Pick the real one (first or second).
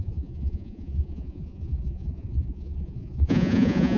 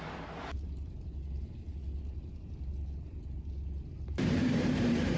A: second